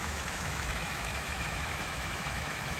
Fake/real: fake